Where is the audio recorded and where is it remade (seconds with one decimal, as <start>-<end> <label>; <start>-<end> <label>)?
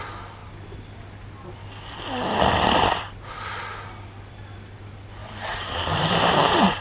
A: 0.0-5.2 recorded; 5.2-6.8 remade